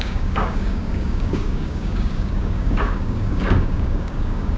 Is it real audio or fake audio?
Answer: fake